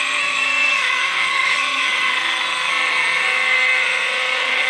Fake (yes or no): yes